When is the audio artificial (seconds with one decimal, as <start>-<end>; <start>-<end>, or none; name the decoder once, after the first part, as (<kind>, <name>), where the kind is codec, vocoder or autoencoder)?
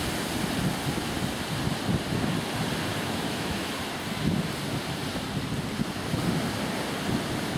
2.9-3.8 (autoencoder, DAC-VAE)